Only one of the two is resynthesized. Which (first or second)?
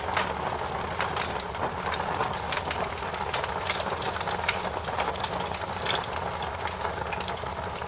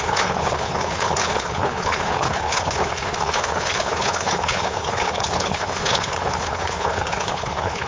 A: second